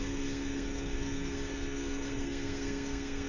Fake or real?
fake